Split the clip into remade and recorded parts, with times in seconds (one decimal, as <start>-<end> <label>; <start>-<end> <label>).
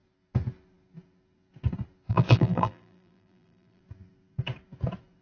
0.0-2.1 recorded; 2.1-3.8 remade; 3.8-5.2 recorded